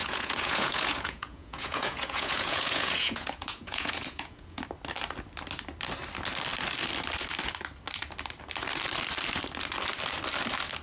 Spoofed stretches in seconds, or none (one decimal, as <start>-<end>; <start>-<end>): 0.0-4.6